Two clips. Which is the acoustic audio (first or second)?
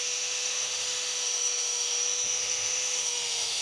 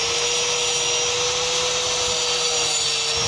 second